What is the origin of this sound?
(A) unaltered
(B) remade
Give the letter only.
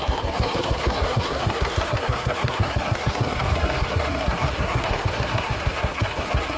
B